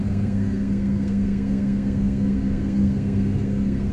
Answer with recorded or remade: remade